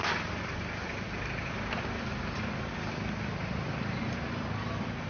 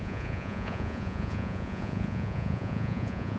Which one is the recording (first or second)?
first